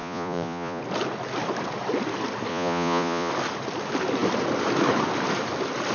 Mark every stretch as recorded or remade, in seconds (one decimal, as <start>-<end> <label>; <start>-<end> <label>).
0.0-0.8 remade; 0.8-2.5 recorded; 2.5-3.3 remade; 3.3-5.9 recorded